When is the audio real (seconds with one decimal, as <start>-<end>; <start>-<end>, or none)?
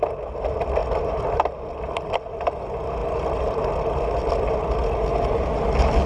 0.0-6.1